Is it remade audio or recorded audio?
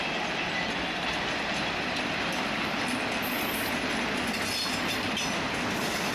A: recorded